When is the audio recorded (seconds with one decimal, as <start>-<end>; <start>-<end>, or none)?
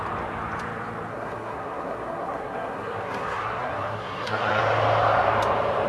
0.0-1.1; 4.6-5.9